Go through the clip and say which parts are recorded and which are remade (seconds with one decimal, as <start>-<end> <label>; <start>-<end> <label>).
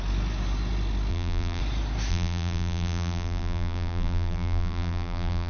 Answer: 0.0-1.1 recorded; 1.1-1.6 remade; 1.6-2.1 recorded; 2.1-5.5 remade